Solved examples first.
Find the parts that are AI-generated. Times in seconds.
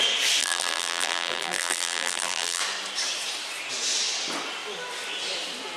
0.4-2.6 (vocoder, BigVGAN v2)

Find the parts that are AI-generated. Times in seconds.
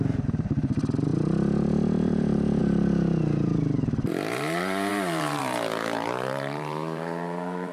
0.0-2.6 (vocoder, BigVGAN v2); 4.1-7.7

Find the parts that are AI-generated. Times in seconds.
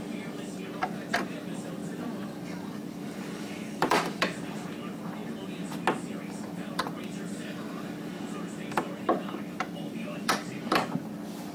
0.0-5.2 (vocoder, BigVGAN v2); 6.1-8.1; 9.0-11.5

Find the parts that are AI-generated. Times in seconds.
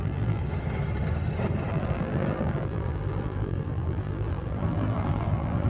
0.0-0.4 (vocoder, BigVGAN v2); 1.7-5.7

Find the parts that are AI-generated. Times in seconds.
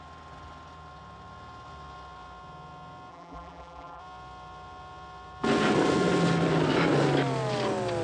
3.1-4.0 (vocoder, BigVGAN v2)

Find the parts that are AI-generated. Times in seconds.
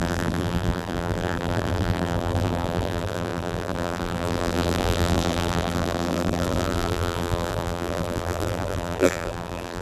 0.0-9.8 (vocoder, BigVGAN v2)